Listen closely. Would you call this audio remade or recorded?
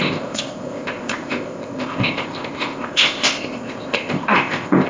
remade